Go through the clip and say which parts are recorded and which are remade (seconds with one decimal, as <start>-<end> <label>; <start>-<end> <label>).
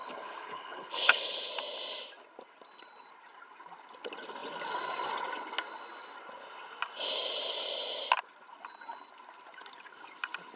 0.0-1.5 remade; 1.5-10.6 recorded